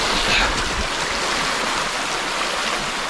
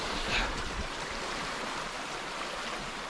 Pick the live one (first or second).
first